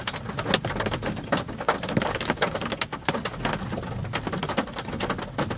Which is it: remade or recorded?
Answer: recorded